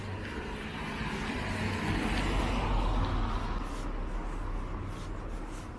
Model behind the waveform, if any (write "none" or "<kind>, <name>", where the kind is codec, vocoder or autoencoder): none